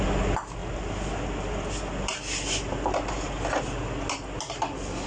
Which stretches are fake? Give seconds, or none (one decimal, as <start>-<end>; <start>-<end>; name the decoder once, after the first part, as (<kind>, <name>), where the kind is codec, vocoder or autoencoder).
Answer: none

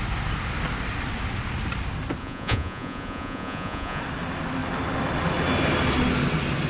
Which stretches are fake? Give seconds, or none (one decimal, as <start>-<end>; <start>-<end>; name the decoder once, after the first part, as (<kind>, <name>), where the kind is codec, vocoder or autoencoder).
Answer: 2.2-4.0 (vocoder, Vocos)

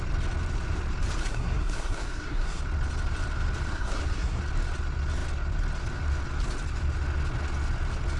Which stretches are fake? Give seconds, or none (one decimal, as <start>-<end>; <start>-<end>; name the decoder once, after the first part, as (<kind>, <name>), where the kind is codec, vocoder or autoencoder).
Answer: 1.2-2.6 (codec, SNAC); 3.7-4.4

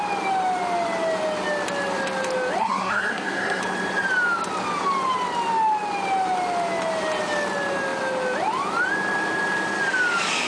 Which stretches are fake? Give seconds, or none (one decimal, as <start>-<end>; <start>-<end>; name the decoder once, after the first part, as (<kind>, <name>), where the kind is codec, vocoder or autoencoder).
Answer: 2.6-3.6 (codec, SNAC)